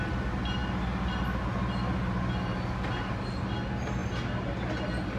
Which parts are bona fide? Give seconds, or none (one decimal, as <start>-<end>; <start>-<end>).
0.0-5.2